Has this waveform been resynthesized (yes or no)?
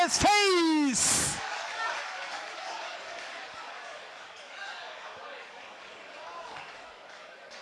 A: yes